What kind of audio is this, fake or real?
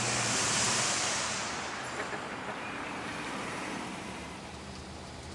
fake